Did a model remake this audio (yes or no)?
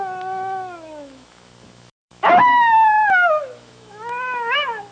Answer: yes